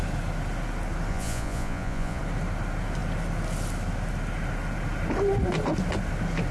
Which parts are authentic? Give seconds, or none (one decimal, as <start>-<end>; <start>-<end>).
0.0-1.1; 2.2-6.5